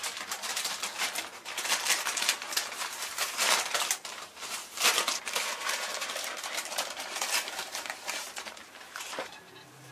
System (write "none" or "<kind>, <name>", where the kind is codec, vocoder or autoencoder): vocoder, BigVGAN v2